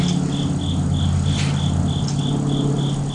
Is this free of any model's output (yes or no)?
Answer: yes